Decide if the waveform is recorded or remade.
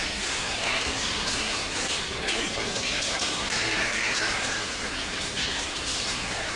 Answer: remade